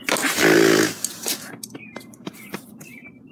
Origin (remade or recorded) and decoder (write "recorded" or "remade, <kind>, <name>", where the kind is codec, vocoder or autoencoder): remade, vocoder, BigVGAN v2